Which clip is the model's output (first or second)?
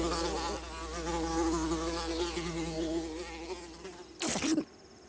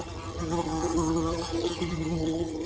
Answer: second